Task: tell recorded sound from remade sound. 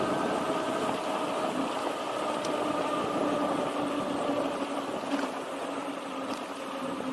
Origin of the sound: recorded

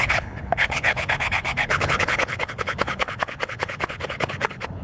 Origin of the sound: remade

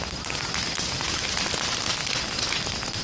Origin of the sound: recorded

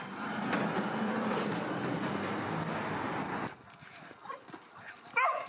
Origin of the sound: recorded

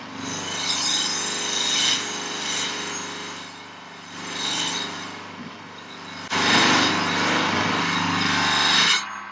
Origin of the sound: recorded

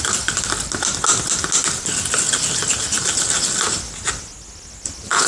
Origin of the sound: recorded